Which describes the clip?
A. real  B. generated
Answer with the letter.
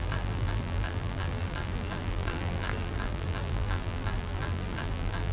B